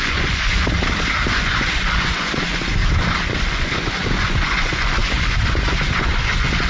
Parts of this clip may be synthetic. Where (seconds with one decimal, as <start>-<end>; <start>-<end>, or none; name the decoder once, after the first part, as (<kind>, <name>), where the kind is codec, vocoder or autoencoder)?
0.0-0.6 (vocoder, Vocos); 1.3-2.8; 3.4-6.7